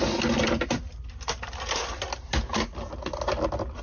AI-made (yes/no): no